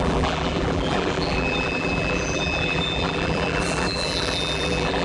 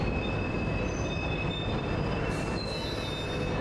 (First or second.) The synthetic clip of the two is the first